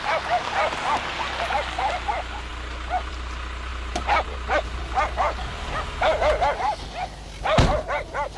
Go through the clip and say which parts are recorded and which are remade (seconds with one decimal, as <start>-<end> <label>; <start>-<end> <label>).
0.0-3.7 recorded; 3.7-4.8 remade; 4.8-8.4 recorded